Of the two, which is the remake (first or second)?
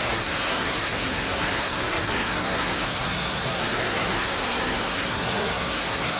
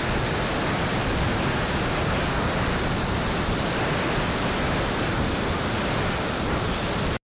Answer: first